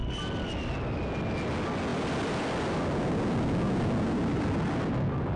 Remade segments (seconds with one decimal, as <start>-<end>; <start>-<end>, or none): none